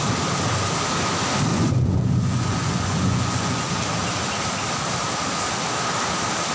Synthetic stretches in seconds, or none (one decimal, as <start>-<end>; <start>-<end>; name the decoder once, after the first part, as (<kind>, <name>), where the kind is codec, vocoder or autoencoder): 1.5-3.7 (vocoder, Vocos)